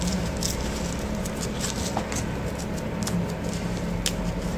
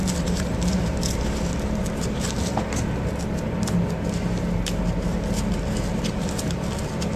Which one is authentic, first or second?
first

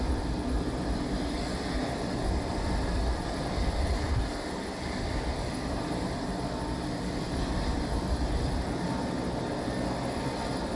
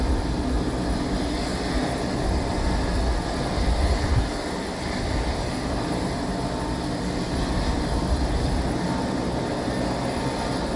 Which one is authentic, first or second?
second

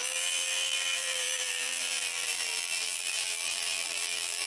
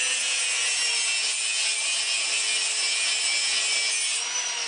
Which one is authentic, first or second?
second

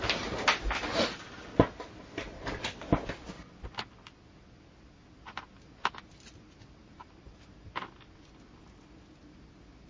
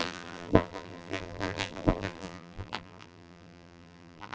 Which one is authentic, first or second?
first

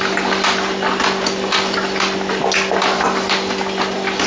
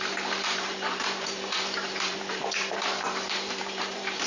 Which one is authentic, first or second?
first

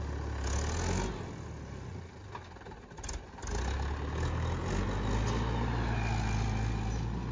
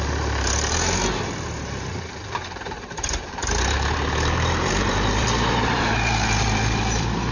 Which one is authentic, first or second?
first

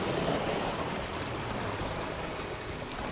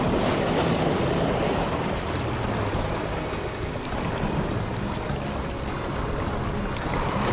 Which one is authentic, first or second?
second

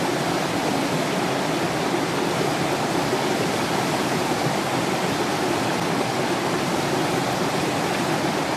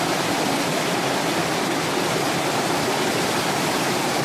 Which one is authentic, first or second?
first